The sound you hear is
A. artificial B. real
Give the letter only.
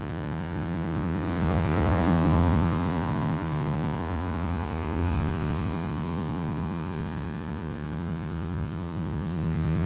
A